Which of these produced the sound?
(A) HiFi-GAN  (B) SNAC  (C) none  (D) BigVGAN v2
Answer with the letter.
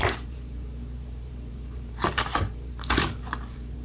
D